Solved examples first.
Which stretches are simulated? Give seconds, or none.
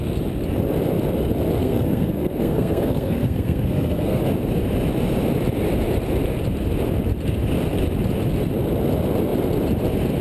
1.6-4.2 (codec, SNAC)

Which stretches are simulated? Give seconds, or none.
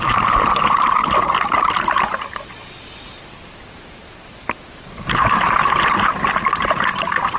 none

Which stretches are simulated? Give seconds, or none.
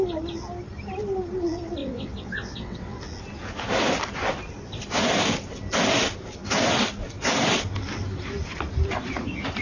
1.8-3.0 (vocoder, WaveNeXt)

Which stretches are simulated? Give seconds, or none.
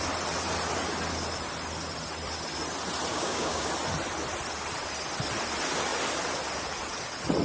3.1-3.7 (codec, DAC)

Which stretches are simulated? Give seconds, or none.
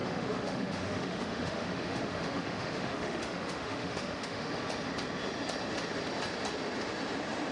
0.0-4.5 (autoencoder, DAC-VAE)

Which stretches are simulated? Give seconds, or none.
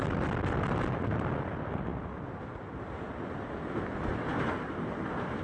none